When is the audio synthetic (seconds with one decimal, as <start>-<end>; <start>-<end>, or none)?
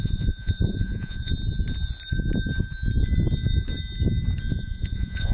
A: 0.0-1.3; 4.5-5.3